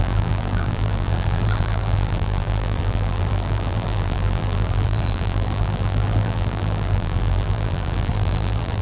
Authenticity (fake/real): fake